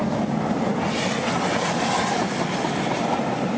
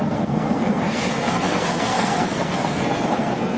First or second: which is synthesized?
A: second